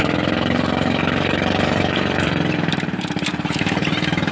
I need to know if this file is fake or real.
fake